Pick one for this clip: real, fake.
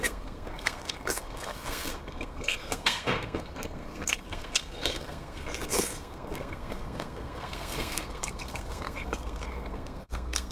fake